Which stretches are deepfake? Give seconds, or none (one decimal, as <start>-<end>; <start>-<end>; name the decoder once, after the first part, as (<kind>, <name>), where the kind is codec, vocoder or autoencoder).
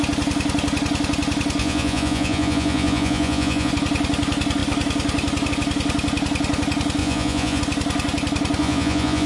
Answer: 1.6-3.7 (vocoder, Vocos); 7.0-7.6; 8.6-9.3